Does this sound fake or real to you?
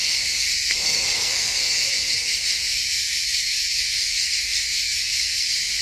fake